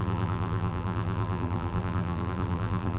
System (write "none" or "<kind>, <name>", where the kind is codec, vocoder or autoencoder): vocoder, BigVGAN v2